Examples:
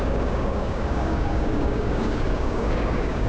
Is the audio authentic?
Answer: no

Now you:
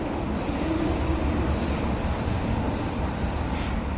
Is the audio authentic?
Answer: yes